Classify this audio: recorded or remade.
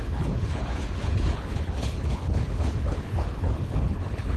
remade